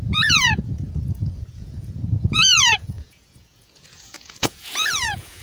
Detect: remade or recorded remade